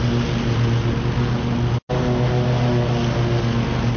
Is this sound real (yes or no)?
yes